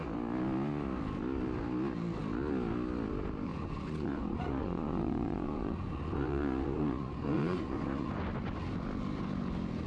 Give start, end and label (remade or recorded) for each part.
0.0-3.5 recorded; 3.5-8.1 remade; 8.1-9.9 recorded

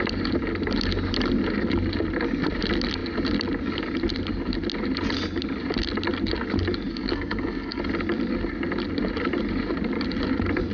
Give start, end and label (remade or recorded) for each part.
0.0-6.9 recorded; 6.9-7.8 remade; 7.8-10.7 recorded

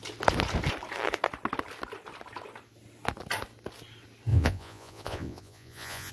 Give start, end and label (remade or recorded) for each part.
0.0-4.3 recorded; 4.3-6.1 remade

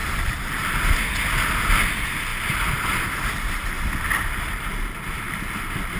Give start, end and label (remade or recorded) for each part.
0.0-1.0 remade; 1.0-6.0 recorded